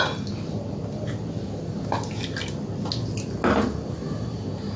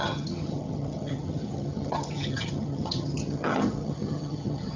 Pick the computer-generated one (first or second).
second